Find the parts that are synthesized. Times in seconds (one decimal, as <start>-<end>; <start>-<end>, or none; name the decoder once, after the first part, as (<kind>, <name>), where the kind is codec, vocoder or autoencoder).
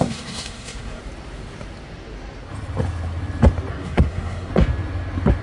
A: 0.0-1.0 (codec, SNAC); 3.7-4.5